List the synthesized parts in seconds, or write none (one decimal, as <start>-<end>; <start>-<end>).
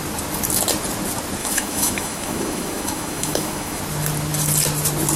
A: 1.4-3.8